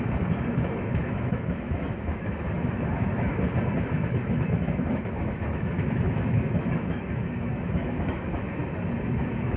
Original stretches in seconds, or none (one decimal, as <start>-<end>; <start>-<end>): 3.3-3.9; 8.6-9.2